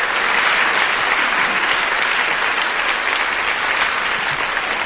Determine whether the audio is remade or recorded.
recorded